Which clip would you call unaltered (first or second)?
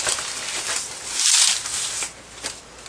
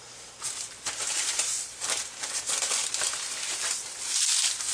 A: first